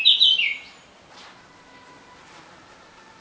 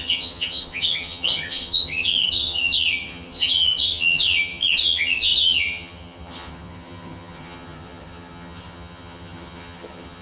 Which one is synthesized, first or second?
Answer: second